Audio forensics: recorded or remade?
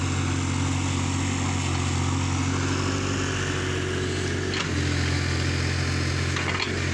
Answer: recorded